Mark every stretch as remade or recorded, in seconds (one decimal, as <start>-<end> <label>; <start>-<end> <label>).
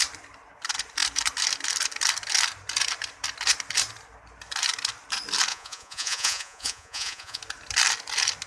0.0-5.5 recorded; 5.5-7.4 remade; 7.4-8.5 recorded